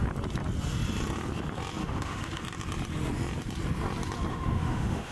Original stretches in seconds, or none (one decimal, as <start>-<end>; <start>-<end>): 0.0-1.8; 2.4-4.3